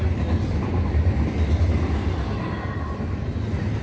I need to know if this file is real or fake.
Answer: real